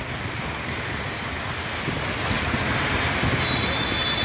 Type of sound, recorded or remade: recorded